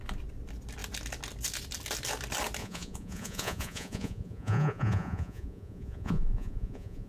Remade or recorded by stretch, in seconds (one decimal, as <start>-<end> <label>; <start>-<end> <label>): 0.0-2.6 recorded; 2.6-7.1 remade